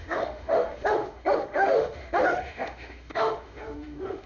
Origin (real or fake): fake